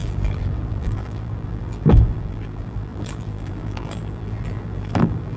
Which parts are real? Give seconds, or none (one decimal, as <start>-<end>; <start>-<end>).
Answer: none